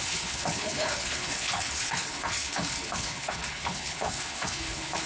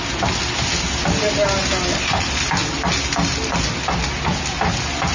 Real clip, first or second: second